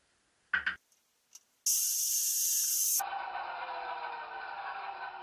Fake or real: real